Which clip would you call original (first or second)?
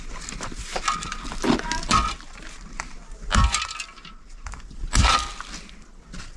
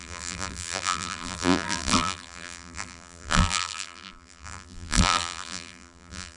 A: first